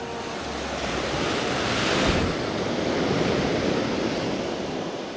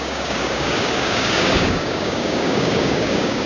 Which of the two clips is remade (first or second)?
second